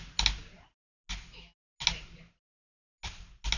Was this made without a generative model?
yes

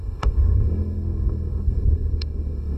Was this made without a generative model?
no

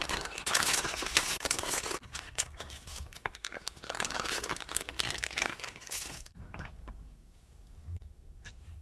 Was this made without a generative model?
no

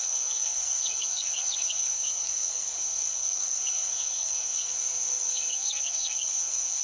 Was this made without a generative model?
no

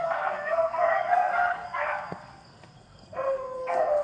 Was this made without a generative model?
no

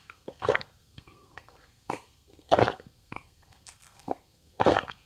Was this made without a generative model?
no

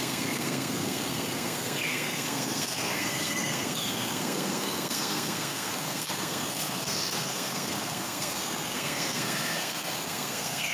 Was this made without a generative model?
no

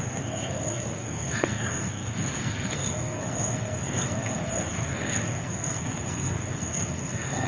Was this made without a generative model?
no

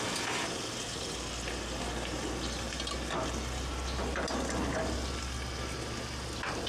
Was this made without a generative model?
yes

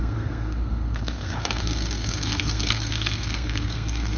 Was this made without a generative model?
no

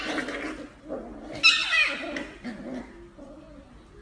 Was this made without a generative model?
yes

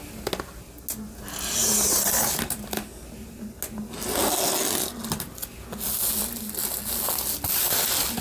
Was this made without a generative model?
yes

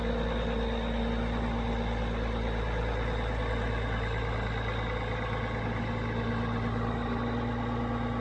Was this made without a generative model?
yes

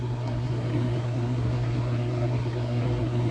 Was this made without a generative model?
no